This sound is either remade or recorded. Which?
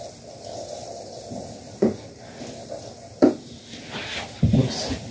recorded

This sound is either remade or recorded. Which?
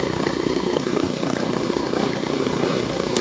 remade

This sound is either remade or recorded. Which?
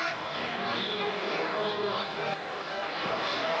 remade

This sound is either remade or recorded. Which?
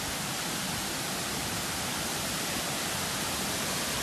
recorded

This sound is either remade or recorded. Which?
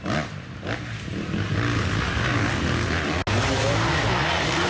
recorded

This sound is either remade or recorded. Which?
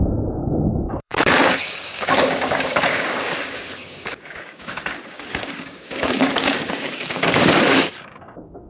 remade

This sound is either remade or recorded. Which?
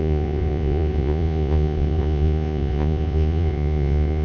remade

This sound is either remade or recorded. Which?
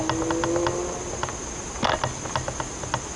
recorded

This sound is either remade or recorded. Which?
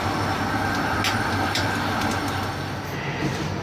recorded